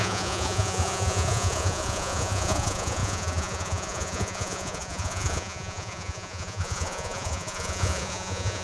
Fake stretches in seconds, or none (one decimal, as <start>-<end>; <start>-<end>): 0.0-8.6